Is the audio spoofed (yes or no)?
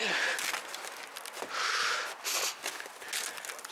no